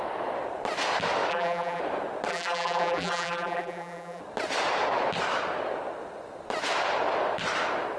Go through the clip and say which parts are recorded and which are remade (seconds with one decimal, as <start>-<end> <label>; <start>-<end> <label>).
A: 0.0-1.3 recorded; 1.3-1.8 remade; 1.8-2.3 recorded; 2.3-4.2 remade; 4.2-8.0 recorded

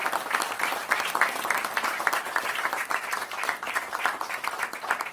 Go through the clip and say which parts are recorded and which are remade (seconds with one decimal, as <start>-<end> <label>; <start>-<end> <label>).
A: 0.0-1.7 recorded; 1.7-5.1 remade

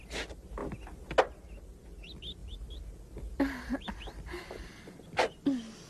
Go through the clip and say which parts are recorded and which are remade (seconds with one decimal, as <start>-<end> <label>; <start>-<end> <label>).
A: 0.0-5.9 recorded

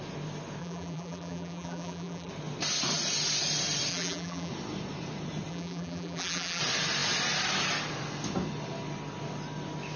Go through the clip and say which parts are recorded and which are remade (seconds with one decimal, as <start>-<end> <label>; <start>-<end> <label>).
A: 0.0-0.6 recorded; 0.6-2.3 remade; 2.3-3.9 recorded; 3.9-4.5 remade; 4.5-5.5 recorded; 5.5-6.6 remade; 6.6-10.0 recorded

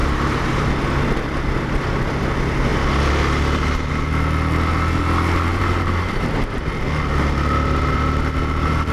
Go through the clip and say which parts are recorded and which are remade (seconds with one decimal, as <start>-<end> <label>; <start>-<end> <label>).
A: 0.0-0.7 remade; 0.7-5.5 recorded; 5.5-6.7 remade; 6.7-8.9 recorded

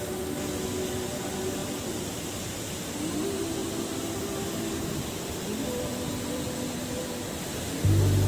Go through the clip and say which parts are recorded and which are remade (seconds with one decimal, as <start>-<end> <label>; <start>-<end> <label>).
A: 0.0-3.6 recorded; 3.6-4.6 remade; 4.6-7.0 recorded; 7.0-7.6 remade; 7.6-8.3 recorded